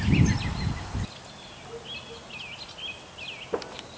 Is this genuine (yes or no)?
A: yes